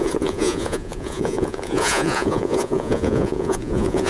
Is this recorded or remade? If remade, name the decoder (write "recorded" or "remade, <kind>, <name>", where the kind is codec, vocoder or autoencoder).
remade, vocoder, Vocos